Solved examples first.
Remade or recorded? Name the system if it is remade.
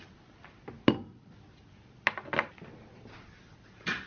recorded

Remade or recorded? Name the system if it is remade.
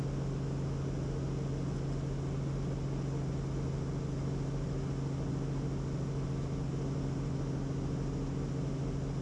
recorded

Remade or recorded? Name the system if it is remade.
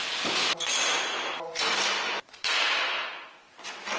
recorded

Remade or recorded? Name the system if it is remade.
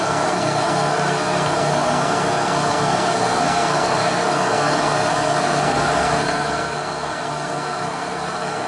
remade, codec, SNAC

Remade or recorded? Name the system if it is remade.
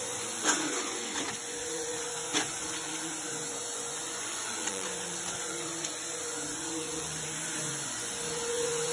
remade, vocoder, Vocos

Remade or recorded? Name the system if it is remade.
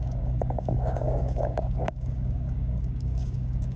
remade, codec, DAC